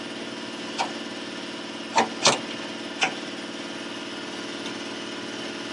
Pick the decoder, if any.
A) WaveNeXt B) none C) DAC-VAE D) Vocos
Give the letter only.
B